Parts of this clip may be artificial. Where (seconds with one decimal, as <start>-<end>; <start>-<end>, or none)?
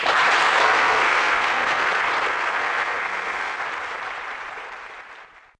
0.4-1.9; 2.3-3.6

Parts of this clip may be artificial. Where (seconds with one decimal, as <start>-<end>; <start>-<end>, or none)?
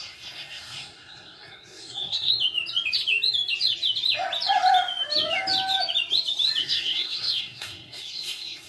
0.0-2.3; 6.6-8.7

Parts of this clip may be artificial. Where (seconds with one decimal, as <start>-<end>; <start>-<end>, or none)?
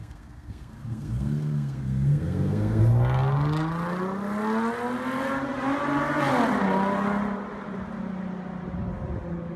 0.0-2.8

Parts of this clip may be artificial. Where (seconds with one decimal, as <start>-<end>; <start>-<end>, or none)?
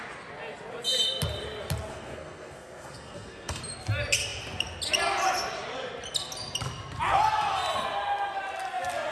1.9-3.6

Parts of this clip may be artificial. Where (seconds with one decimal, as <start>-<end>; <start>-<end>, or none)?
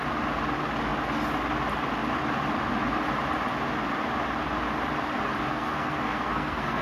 5.5-6.8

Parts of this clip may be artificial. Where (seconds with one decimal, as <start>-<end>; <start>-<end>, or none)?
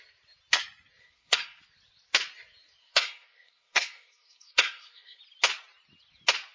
1.0-1.6; 2.8-5.2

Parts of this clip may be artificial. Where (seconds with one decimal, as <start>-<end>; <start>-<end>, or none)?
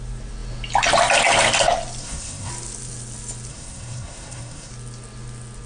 2.0-2.5; 3.5-4.7